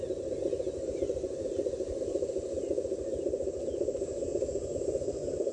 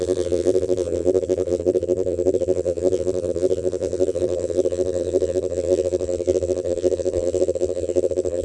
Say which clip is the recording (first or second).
first